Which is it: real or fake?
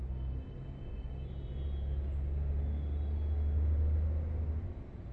real